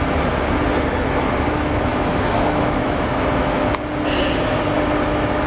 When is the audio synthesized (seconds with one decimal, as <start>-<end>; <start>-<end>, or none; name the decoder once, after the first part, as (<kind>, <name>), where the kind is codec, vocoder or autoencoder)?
1.9-3.7 (autoencoder, DAC-VAE)